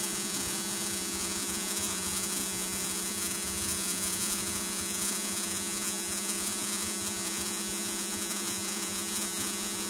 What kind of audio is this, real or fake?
fake